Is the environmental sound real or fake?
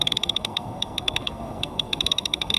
fake